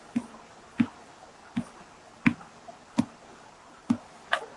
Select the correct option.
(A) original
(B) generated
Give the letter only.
A